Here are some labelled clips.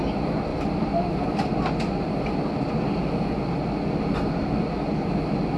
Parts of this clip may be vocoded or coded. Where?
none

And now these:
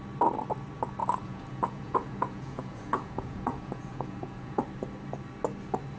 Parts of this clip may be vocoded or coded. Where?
1.0-4.6

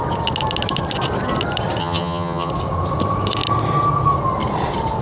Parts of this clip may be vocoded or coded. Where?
1.8-2.5

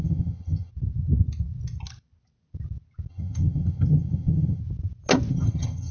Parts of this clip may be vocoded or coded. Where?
0.0-0.7; 3.1-4.6; 5.3-5.9

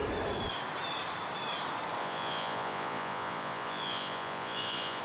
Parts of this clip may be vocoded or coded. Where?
2.0-5.0

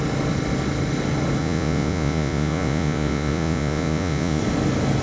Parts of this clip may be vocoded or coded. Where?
1.4-4.4

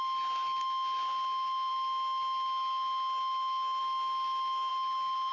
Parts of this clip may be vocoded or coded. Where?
none